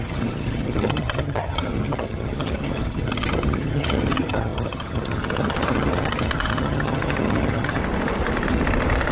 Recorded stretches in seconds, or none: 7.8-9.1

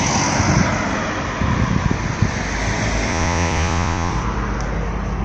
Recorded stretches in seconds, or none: 0.0-3.1; 4.1-5.2

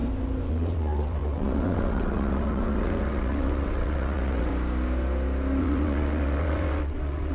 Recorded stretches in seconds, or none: 0.0-0.5; 4.5-5.6

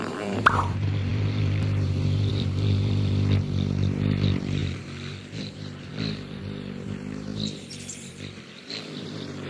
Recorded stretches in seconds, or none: none

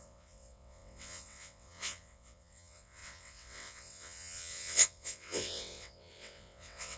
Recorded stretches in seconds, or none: none

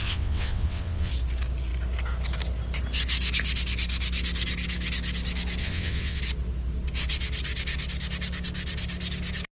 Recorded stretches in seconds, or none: 1.1-5.6; 6.2-9.5

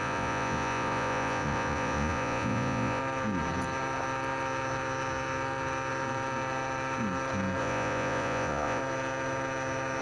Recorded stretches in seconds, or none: 3.0-7.6; 8.8-10.0